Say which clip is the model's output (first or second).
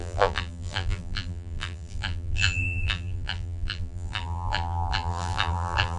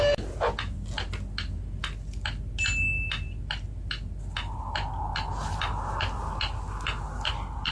first